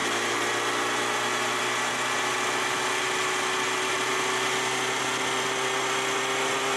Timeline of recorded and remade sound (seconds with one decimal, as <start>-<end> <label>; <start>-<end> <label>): 0.0-6.8 recorded